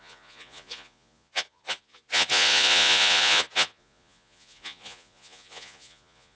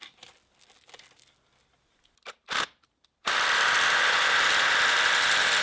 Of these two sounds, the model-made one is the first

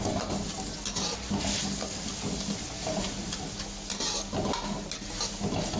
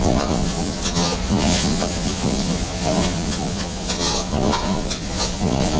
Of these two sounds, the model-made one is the second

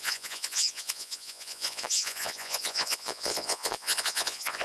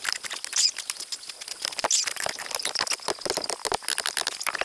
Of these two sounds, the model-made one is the first